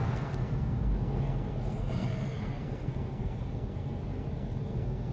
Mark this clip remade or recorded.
remade